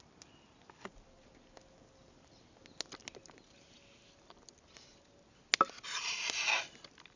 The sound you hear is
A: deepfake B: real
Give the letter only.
B